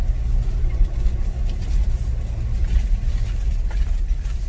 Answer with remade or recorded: recorded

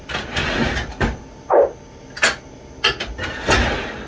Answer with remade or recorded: recorded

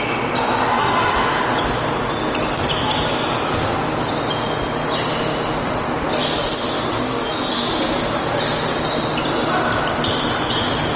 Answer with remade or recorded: recorded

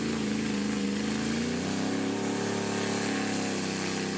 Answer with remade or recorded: recorded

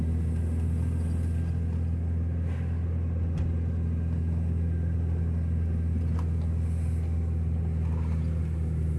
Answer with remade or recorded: recorded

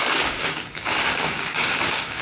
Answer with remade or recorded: remade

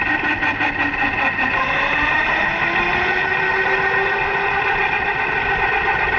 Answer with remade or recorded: recorded